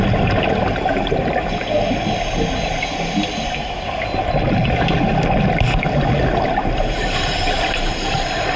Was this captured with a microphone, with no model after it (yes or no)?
yes